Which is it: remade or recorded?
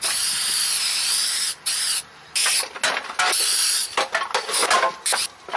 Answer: recorded